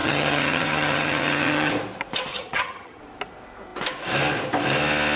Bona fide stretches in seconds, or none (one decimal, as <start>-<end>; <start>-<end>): 1.7-2.3; 3.0-5.2